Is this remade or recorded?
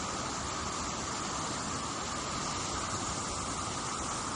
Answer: recorded